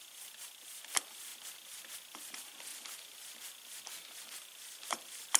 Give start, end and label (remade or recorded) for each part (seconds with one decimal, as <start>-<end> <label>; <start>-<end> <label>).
0.0-1.3 remade; 1.3-2.3 recorded; 2.3-2.7 remade; 2.7-4.2 recorded; 4.2-5.4 remade